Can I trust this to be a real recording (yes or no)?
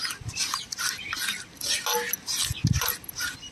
yes